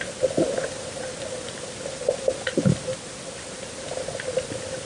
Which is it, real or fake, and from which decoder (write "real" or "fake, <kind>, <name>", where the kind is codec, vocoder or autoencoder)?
real